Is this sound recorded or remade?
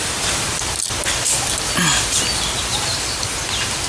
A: recorded